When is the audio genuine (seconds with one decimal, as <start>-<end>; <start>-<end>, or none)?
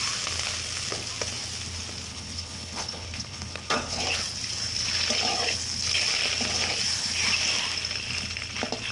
0.0-2.1; 4.0-8.9